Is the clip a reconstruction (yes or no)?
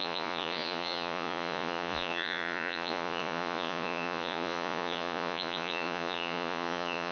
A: yes